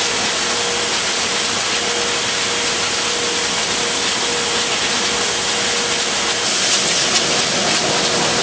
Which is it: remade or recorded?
recorded